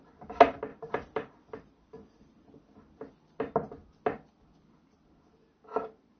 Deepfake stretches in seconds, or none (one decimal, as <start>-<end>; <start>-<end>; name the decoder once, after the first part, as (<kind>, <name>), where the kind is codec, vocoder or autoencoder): 0.7-3.4 (vocoder, BigVGAN v2)